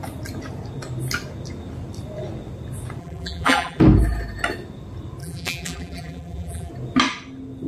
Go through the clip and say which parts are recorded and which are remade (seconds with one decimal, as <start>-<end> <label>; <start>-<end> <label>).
0.0-3.0 recorded; 3.0-3.8 remade; 3.8-5.2 recorded; 5.2-6.7 remade; 6.7-7.7 recorded